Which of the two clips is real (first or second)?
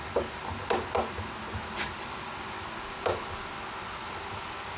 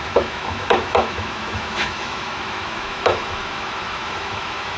first